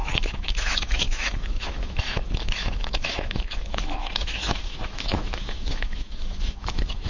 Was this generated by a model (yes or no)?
yes